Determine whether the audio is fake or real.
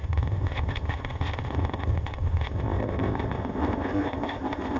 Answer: fake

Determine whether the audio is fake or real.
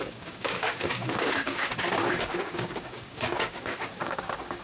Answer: fake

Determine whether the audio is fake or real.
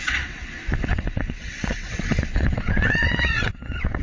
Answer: fake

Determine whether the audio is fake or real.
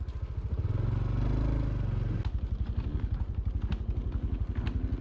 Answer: real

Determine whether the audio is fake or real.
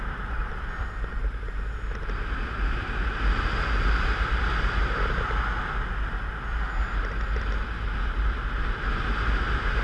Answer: real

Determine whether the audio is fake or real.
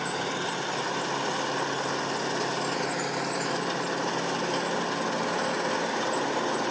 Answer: real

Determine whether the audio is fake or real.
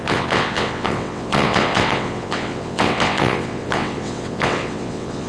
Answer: fake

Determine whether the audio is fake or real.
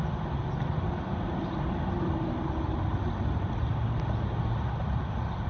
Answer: real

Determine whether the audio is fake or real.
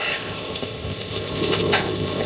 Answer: fake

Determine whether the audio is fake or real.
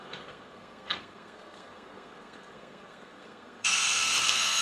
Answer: fake